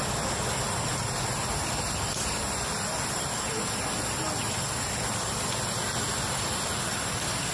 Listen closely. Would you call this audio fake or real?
real